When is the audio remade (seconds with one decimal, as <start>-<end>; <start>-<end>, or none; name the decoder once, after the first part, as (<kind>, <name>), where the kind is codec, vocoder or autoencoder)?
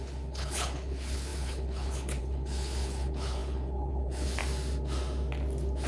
0.0-4.4 (codec, HILCodec)